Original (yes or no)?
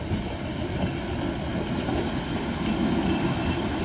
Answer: yes